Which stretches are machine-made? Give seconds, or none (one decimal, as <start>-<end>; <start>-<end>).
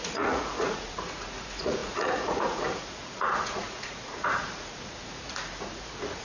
0.0-6.2